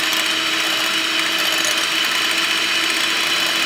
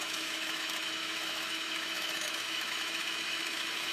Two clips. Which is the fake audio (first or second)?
second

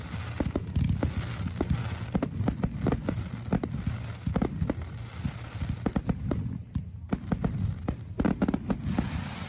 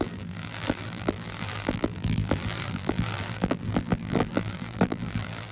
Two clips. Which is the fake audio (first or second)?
second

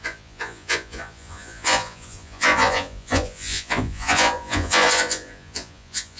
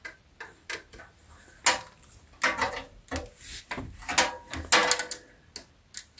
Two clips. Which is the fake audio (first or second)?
first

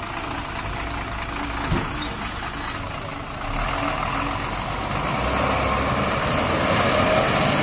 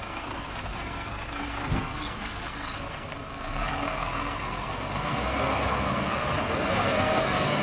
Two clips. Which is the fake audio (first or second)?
second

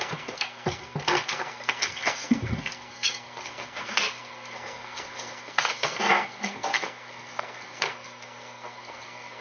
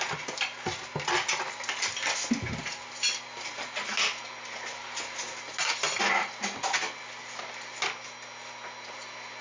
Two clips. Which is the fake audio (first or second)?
first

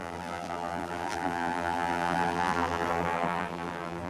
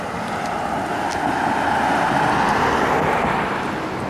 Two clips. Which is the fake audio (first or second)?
first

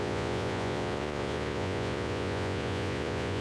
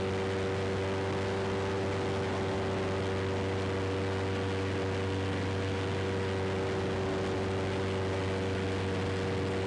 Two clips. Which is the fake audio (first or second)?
first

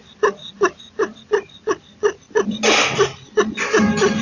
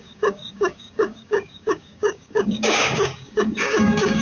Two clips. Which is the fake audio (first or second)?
second